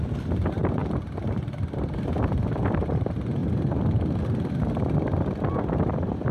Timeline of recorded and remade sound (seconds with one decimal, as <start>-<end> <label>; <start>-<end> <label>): 0.0-6.3 recorded